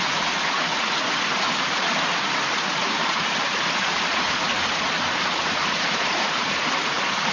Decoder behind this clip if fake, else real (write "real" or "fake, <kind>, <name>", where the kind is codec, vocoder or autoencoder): fake, vocoder, Vocos